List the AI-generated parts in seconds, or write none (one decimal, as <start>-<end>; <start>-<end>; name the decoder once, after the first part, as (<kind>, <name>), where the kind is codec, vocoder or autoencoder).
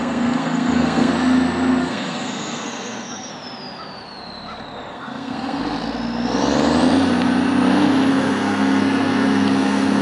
0.0-1.1 (codec, SNAC); 1.8-3.3; 4.9-5.6; 8.1-10.0